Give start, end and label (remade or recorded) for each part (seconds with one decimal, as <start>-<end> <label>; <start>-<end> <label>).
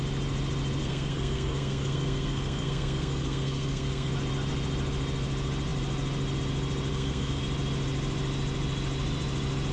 0.0-0.8 recorded; 0.8-4.1 remade; 4.1-6.9 recorded; 6.9-7.4 remade; 7.4-9.7 recorded